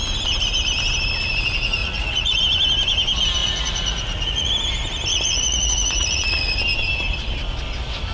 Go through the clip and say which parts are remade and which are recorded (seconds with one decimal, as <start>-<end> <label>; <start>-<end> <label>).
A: 0.0-1.8 recorded; 1.8-2.4 remade; 2.4-3.4 recorded; 3.4-4.5 remade; 4.5-5.1 recorded; 5.1-6.6 remade; 6.6-8.1 recorded